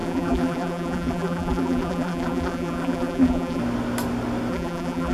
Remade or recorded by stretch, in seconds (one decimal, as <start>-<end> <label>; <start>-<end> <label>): 0.0-3.6 remade; 3.6-4.5 recorded; 4.5-5.1 remade